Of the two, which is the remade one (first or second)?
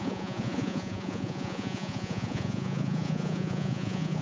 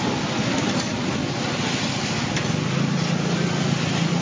first